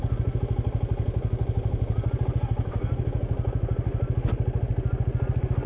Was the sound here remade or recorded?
recorded